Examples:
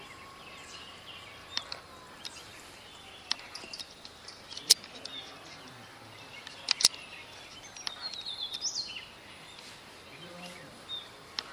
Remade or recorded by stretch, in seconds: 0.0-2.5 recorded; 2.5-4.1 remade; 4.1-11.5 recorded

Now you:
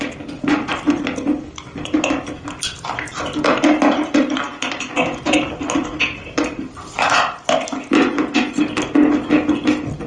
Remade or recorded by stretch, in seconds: 0.0-10.1 recorded

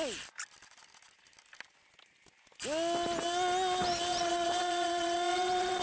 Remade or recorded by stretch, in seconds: 0.0-4.1 recorded; 4.1-5.8 remade

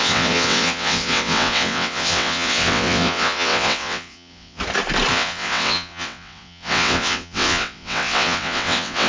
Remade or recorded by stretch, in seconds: 0.0-4.6 remade; 4.6-5.1 recorded; 5.1-9.1 remade